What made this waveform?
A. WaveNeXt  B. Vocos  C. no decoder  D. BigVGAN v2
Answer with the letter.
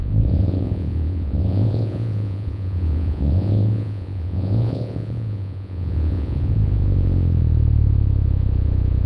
B